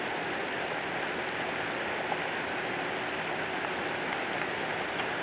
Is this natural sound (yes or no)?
yes